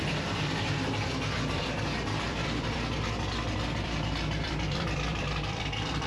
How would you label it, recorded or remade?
remade